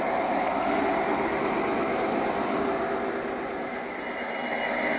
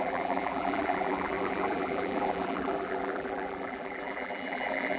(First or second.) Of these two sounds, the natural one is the first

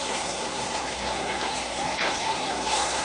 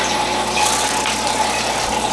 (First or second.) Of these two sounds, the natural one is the second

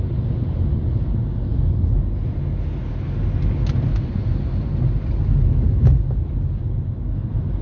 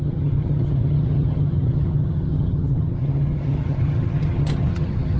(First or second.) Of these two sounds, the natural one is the first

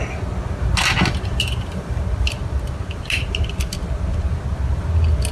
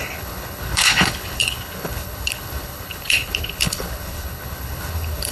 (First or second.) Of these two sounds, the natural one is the first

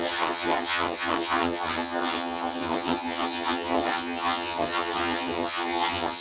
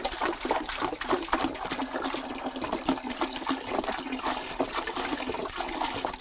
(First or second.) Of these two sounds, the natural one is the second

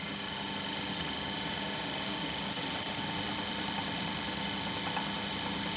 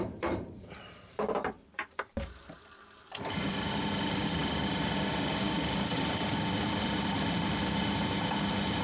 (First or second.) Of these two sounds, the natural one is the first